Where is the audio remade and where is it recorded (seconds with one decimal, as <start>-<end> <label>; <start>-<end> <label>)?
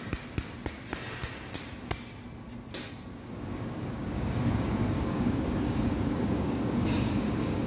0.0-3.1 recorded; 3.1-7.7 remade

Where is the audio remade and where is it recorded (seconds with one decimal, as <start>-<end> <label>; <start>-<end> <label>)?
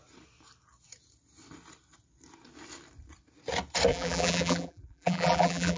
0.0-3.9 recorded; 3.9-5.8 remade